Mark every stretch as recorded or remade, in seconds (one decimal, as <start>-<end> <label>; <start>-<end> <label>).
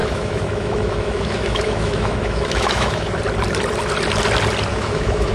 0.0-3.2 remade; 3.2-4.7 recorded; 4.7-5.3 remade